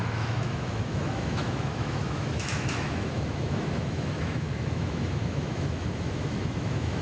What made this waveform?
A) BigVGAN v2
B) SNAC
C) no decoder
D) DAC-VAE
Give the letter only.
D